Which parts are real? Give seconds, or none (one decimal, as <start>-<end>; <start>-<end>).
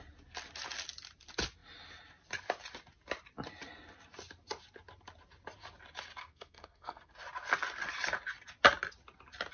0.0-6.2; 7.1-9.5